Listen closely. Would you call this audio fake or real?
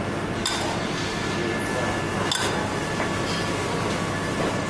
real